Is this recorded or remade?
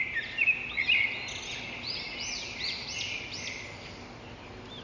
recorded